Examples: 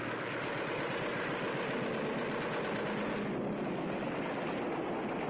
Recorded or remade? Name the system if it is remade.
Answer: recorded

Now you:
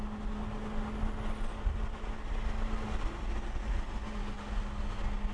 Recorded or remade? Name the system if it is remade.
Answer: recorded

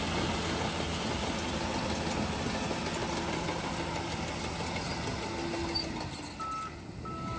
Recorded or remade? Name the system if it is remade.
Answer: recorded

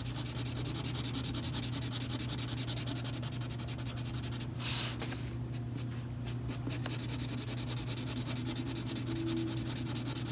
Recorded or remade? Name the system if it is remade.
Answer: recorded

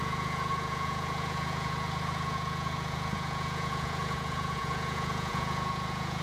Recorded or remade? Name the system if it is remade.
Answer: remade, vocoder, Vocos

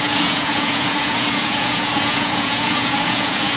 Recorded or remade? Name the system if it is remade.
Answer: remade, vocoder, Vocos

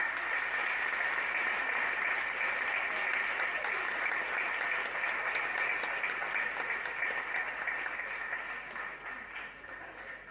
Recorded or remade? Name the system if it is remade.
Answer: recorded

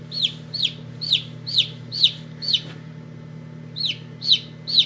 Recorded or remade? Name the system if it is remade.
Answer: recorded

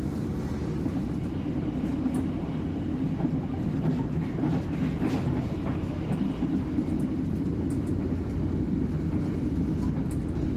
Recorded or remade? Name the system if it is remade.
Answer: recorded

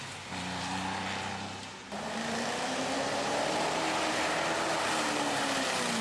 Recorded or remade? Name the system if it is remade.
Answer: recorded